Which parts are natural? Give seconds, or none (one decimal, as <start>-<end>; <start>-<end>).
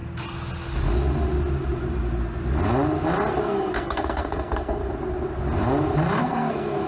0.0-3.4; 4.8-6.2